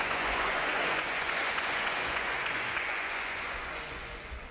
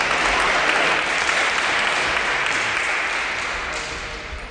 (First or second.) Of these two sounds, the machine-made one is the first